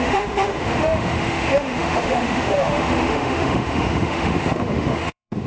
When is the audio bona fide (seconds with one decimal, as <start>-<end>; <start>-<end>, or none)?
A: none